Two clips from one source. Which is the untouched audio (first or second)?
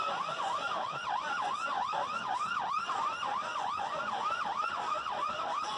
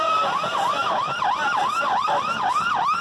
second